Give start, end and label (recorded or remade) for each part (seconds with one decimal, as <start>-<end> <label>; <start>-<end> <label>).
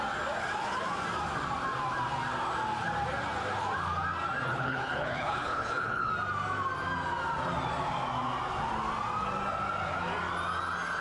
0.0-4.5 recorded; 4.5-6.1 remade; 6.1-11.0 recorded